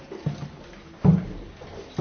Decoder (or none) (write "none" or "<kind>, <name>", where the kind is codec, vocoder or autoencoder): vocoder, BigVGAN v2